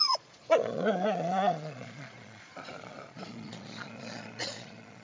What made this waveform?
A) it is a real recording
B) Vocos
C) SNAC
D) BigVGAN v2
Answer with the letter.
B